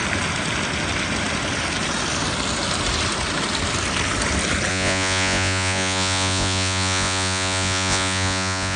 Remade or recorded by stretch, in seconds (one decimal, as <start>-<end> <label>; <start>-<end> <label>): 0.0-4.7 recorded; 4.7-8.8 remade